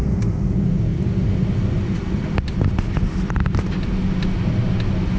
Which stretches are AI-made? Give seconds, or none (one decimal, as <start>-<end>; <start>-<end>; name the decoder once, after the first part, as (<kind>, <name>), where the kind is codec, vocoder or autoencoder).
none